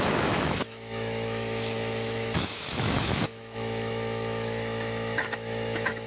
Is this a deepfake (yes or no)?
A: yes